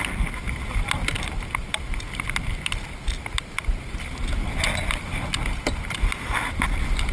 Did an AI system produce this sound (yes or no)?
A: no